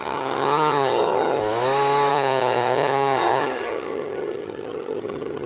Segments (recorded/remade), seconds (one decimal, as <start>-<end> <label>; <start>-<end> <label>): 0.0-1.4 remade; 1.4-2.1 recorded; 2.1-5.5 remade